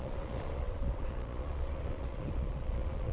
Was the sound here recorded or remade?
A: remade